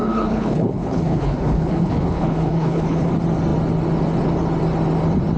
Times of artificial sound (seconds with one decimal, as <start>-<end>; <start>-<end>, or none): 0.0-3.1